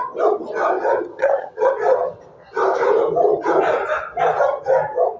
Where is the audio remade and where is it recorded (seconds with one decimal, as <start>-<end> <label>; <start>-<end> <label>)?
0.0-1.1 recorded; 1.1-1.7 remade; 1.7-5.2 recorded